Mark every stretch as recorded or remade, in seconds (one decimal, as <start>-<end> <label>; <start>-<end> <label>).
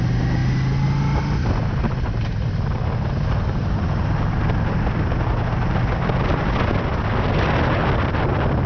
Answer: 0.0-8.7 recorded